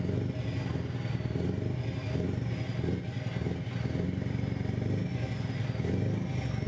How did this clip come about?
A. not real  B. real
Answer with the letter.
B